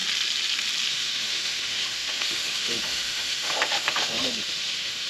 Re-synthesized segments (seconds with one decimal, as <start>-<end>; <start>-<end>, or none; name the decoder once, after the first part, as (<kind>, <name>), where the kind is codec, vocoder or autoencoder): 0.9-5.1 (autoencoder, DAC-VAE)